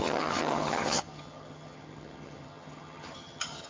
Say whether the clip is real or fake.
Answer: fake